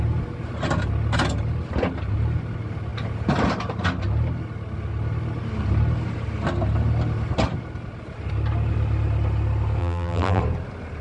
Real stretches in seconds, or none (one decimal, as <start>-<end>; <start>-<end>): 0.0-9.8; 10.4-11.0